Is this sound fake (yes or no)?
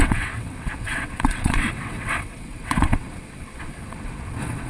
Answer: yes